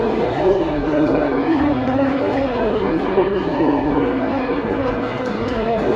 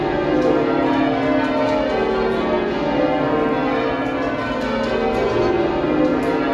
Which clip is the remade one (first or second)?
first